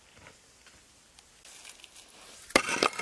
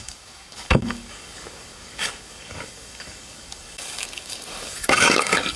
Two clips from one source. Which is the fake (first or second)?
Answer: second